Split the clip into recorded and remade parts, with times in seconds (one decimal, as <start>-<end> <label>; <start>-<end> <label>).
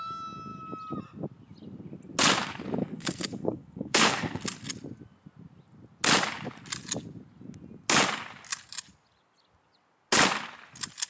0.0-2.8 recorded; 2.8-4.4 remade; 4.4-11.1 recorded